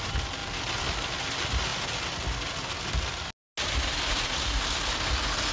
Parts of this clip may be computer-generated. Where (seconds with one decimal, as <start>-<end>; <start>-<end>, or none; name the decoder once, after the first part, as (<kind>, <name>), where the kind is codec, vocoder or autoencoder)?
none